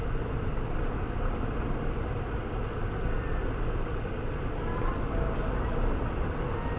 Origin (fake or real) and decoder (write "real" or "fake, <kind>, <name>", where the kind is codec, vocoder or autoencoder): real